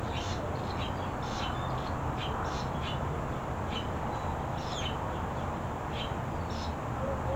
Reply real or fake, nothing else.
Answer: real